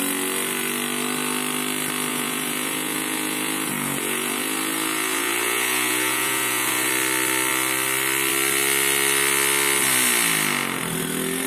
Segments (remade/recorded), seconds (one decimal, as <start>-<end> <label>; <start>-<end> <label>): 0.0-2.1 recorded; 2.1-6.9 remade; 6.9-11.5 recorded